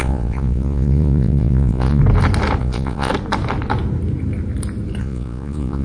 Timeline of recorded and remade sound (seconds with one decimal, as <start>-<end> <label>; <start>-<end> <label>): 0.0-2.0 remade; 2.0-2.6 recorded; 2.6-3.1 remade; 3.1-5.0 recorded; 5.0-5.8 remade